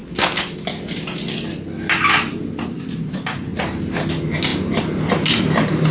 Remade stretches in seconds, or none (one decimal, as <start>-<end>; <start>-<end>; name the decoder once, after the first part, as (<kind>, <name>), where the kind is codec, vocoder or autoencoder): none